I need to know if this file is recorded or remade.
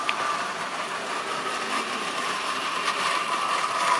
remade